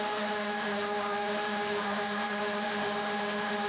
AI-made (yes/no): yes